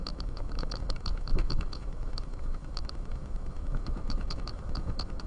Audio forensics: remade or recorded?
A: remade